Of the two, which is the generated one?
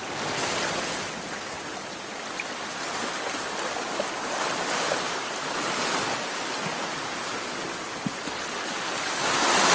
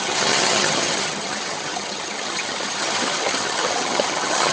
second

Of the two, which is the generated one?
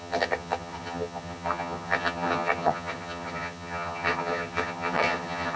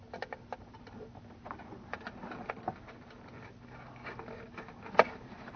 first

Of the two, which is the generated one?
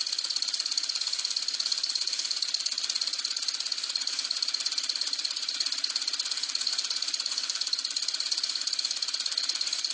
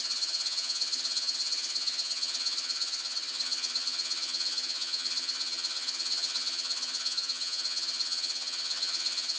second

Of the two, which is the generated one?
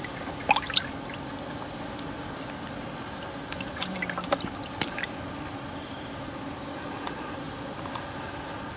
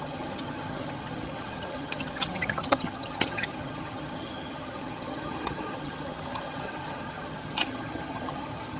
second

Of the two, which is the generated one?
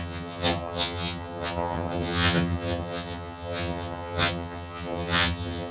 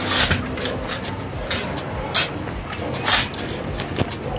first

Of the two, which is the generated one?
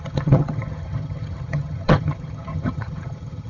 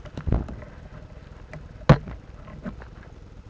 first